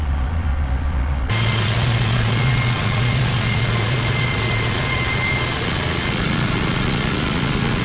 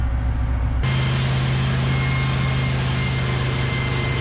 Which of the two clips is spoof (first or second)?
first